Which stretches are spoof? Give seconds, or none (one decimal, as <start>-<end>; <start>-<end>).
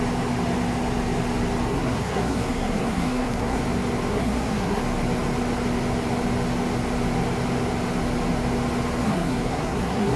1.7-3.6; 4.1-4.8; 9.0-10.2